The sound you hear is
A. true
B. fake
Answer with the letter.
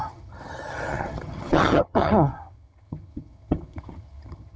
B